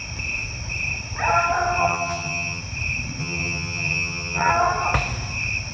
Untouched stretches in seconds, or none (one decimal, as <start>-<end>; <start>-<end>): 0.0-1.8; 2.6-3.2; 4.5-5.7